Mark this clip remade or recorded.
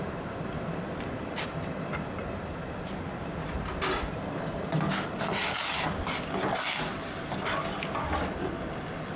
recorded